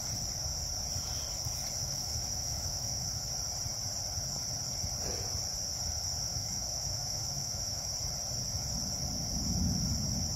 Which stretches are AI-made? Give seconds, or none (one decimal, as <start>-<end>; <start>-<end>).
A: 1.8-3.3; 6.3-7.9